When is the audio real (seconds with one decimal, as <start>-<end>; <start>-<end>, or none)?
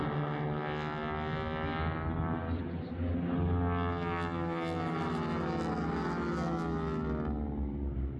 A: 0.0-8.2